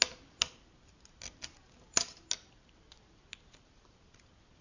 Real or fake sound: real